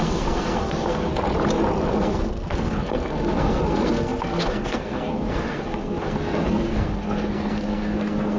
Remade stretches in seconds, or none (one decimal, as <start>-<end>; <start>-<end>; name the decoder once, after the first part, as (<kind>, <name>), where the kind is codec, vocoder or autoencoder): 0.0-1.1 (codec, SNAC); 1.9-8.4